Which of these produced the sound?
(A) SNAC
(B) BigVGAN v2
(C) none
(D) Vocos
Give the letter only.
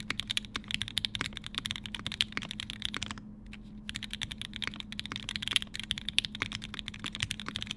C